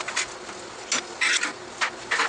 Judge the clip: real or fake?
real